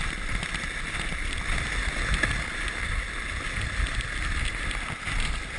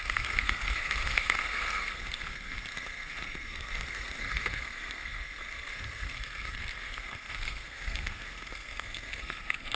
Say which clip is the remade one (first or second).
second